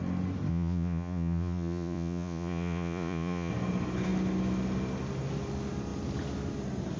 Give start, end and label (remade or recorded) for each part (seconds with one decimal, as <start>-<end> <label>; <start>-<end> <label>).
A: 0.0-0.5 recorded; 0.5-3.5 remade; 3.5-7.0 recorded